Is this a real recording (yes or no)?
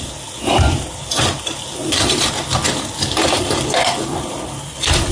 yes